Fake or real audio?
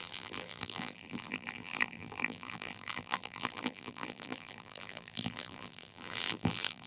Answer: fake